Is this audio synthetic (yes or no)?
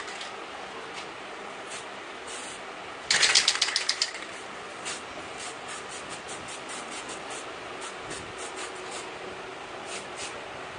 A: no